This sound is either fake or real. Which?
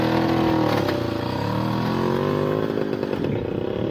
real